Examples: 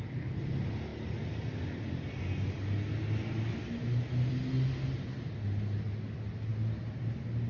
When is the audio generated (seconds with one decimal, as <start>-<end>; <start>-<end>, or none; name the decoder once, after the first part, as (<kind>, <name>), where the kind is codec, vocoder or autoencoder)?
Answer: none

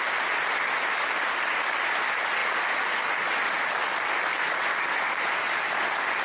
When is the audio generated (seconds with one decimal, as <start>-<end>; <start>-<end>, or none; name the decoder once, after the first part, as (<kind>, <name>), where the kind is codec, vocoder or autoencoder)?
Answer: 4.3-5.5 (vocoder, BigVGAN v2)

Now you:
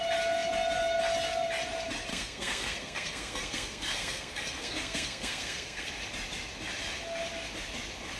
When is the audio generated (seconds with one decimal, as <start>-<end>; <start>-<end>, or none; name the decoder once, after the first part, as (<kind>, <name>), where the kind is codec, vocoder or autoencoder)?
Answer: 2.1-5.9 (codec, SNAC)

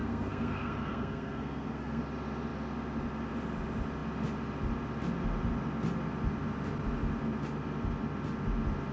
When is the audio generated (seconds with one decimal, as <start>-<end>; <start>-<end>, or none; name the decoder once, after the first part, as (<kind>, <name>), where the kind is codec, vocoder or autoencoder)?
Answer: 0.0-2.0 (codec, SNAC)

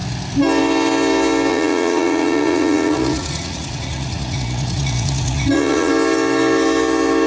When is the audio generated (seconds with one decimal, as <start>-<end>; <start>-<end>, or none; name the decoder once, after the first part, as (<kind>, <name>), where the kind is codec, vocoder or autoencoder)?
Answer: 1.5-5.9 (vocoder, Vocos)